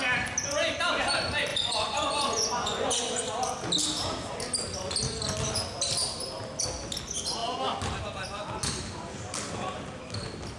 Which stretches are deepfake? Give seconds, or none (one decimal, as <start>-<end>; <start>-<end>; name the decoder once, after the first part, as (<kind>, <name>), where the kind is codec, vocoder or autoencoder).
1.5-2.9 (vocoder, Vocos)